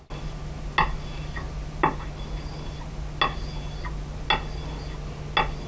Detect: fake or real real